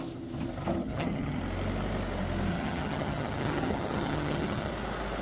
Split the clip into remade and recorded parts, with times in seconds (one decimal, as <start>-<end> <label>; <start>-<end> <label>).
0.0-0.8 recorded; 0.8-1.4 remade; 1.4-2.5 recorded; 2.5-4.7 remade; 4.7-5.2 recorded